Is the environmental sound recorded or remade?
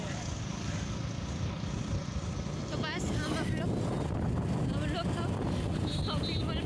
recorded